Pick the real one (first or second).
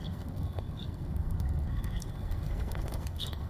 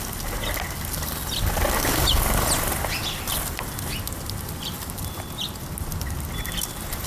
second